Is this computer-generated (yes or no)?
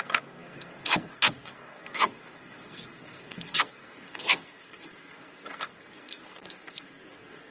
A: yes